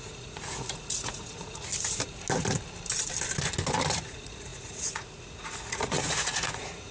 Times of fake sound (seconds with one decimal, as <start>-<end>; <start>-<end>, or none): 0.0-1.7; 3.9-6.9